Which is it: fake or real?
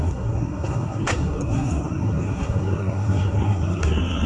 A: fake